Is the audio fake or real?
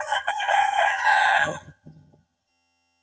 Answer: fake